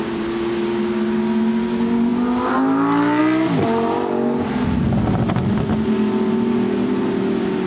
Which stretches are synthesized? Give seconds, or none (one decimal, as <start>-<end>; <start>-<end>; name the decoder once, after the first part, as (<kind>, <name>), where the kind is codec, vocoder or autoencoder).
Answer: none